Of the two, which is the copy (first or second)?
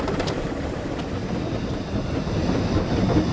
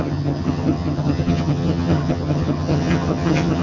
second